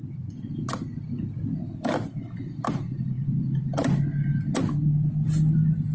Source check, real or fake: real